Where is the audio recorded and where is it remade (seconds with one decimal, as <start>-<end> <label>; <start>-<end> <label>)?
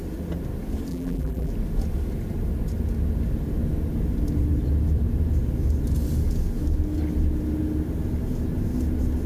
0.0-0.9 recorded; 0.9-1.5 remade; 1.5-9.3 recorded